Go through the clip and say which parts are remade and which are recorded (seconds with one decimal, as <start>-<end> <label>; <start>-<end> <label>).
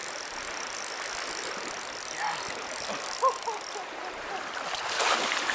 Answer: 0.0-5.5 recorded